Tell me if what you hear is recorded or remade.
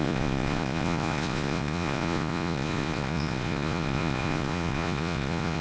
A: remade